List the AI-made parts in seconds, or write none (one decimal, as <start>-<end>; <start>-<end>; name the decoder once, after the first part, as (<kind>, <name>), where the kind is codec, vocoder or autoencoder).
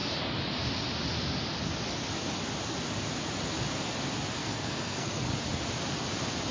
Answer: 4.4-5.3 (codec, SNAC)